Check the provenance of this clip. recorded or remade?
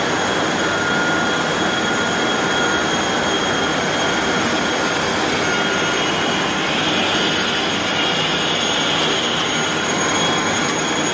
recorded